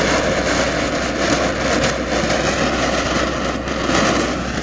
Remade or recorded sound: recorded